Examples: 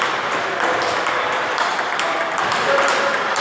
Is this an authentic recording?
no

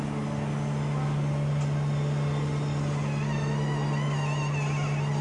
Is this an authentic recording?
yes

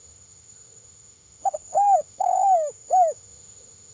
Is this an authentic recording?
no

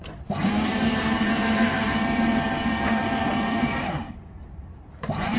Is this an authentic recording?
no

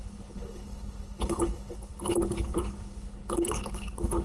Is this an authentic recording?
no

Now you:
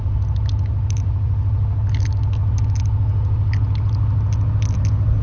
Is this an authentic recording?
yes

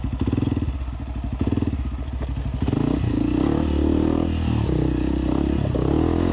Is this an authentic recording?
yes